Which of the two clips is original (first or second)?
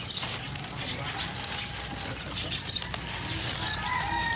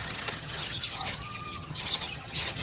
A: first